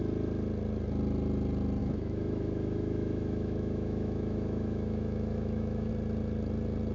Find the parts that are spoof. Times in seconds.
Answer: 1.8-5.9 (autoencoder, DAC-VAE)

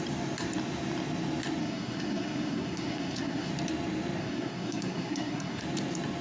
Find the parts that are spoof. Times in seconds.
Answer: 1.6-3.5 (codec, SNAC); 4.2-5.6

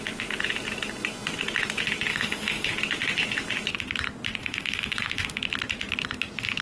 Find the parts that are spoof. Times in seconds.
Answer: 2.1-2.7 (autoencoder, DAC-VAE); 4.4-5.4

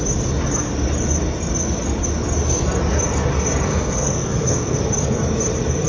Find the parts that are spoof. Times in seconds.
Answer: 3.7-4.8 (codec, SNAC)

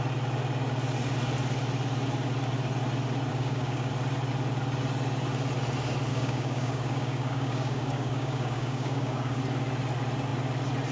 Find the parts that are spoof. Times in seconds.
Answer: 3.3-3.9 (codec, DAC); 6.1-9.4

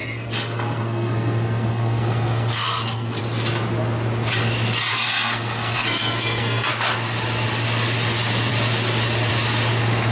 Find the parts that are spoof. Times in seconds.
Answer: 0.0-3.2 (codec, SNAC); 4.9-6.7